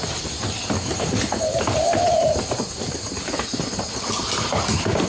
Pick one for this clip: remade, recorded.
remade